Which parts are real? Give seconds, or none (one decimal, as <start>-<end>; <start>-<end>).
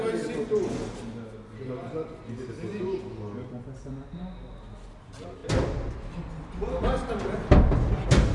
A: 0.0-8.3